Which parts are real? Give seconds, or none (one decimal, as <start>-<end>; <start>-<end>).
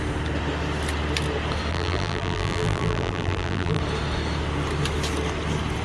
0.0-1.7; 3.8-5.8